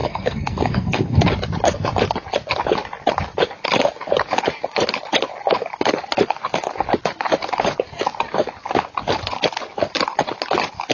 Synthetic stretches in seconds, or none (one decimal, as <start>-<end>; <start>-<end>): 0.0-1.2